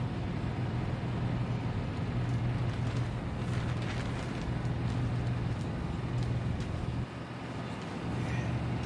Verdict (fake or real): real